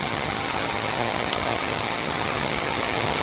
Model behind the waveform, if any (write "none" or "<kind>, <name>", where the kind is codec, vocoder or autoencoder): vocoder, HiFi-GAN